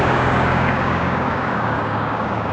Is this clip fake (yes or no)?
yes